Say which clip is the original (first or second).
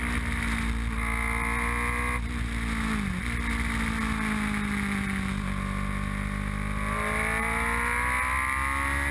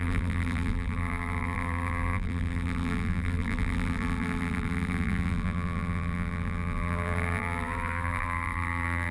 first